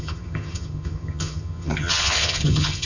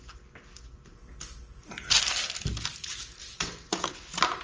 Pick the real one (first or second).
second